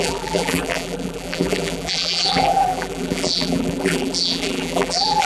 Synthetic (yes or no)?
yes